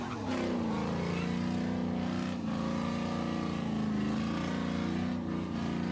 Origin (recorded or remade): recorded